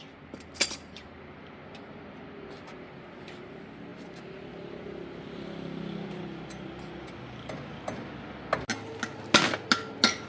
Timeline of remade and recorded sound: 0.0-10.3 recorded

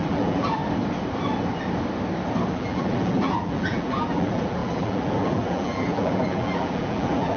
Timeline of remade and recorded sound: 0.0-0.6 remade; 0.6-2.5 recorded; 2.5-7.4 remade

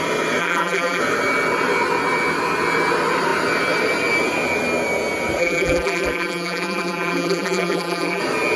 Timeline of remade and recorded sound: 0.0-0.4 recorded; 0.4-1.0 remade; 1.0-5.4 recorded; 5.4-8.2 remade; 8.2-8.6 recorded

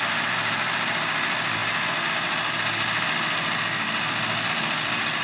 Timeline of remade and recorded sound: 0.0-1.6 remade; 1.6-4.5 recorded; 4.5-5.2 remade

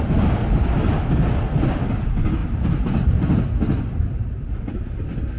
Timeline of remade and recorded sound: 0.0-2.4 recorded; 2.4-3.4 remade; 3.4-5.4 recorded